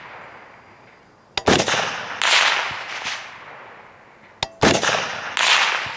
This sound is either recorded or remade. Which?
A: recorded